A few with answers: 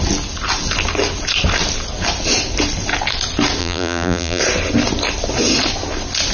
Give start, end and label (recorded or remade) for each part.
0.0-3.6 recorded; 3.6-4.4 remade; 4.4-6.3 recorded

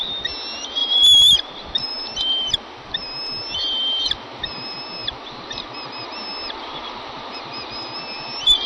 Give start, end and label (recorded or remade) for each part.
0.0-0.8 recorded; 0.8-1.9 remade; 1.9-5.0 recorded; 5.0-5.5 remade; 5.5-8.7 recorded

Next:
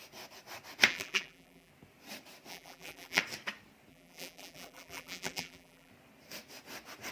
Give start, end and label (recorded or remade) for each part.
0.0-0.9 recorded; 0.9-1.7 remade; 1.7-2.5 recorded; 2.5-3.2 remade; 3.2-3.9 recorded; 3.9-5.9 remade; 5.9-7.1 recorded

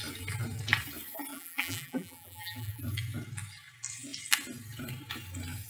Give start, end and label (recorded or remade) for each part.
0.0-1.3 recorded; 1.3-2.8 remade; 2.8-5.7 recorded

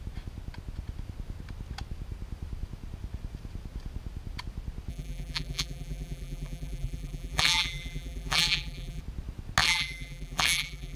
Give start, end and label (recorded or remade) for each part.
0.0-4.9 recorded; 4.9-9.0 remade; 9.0-9.6 recorded; 9.6-11.0 remade